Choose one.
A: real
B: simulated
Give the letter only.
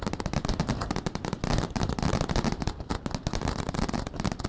A